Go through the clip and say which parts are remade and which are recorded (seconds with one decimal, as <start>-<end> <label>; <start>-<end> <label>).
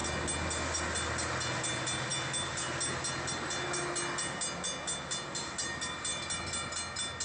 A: 0.0-7.2 recorded